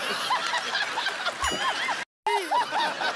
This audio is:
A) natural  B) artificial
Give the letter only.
A